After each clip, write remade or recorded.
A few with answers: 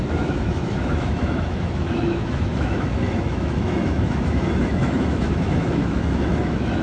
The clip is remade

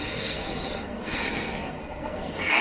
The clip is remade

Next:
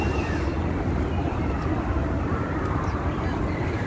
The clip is recorded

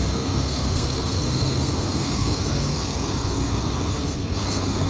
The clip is remade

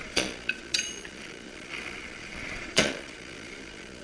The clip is remade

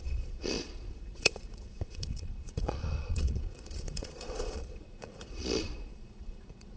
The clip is remade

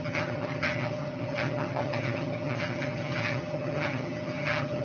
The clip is remade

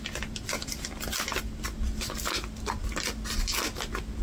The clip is recorded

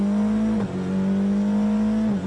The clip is recorded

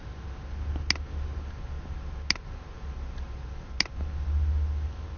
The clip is recorded